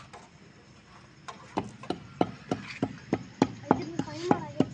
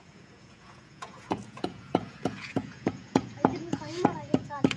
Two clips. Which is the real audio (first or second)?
first